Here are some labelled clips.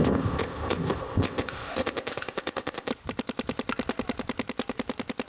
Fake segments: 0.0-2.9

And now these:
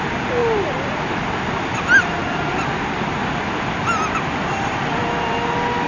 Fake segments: none

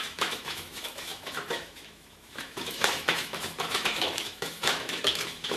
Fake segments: 0.0-5.6

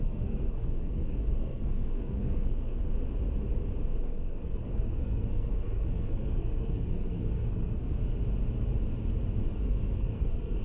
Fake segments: 0.0-2.9; 4.0-8.0; 9.6-10.6